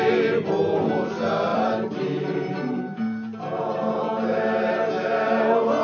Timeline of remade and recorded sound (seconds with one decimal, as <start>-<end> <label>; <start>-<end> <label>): 0.0-1.5 recorded; 1.5-4.7 remade; 4.7-5.8 recorded

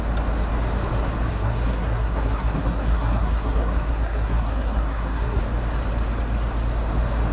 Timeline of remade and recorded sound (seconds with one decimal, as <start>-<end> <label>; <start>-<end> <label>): 0.0-1.3 recorded; 1.3-5.4 remade; 5.4-7.3 recorded

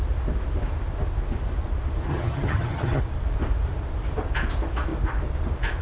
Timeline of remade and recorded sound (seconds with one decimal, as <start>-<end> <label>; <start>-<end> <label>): 0.0-2.1 recorded; 2.1-3.0 remade; 3.0-5.8 recorded

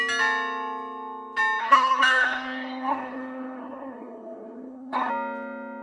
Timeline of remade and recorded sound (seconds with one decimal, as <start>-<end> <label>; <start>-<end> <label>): 0.0-1.6 recorded; 1.6-5.1 remade; 5.1-5.8 recorded

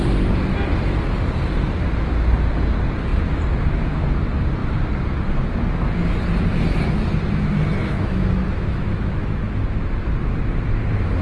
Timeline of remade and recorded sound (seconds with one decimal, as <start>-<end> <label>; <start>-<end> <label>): 0.0-7.8 recorded; 7.8-9.4 remade; 9.4-11.2 recorded